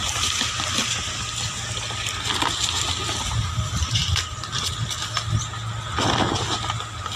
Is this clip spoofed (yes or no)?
no